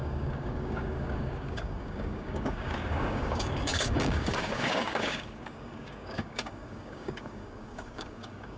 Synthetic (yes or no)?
yes